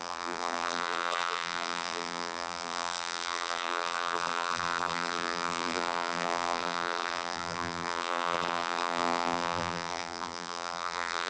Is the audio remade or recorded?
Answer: remade